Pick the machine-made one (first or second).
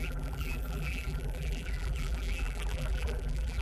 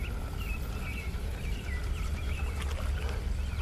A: first